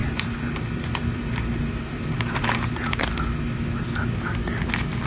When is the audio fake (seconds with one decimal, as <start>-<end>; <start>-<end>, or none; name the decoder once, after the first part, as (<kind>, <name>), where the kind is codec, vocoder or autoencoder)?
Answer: 0.0-3.1 (vocoder, BigVGAN v2)